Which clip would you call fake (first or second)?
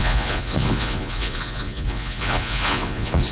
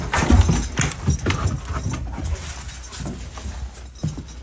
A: first